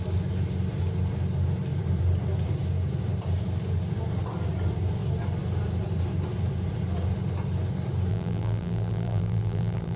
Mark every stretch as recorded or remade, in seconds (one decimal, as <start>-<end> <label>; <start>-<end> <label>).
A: 0.0-8.1 recorded; 8.1-10.0 remade